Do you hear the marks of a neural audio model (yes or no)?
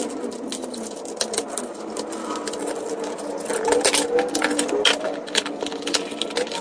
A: no